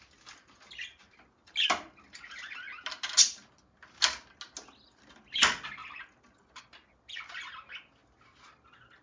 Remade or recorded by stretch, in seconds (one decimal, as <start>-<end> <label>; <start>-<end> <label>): 0.0-9.0 recorded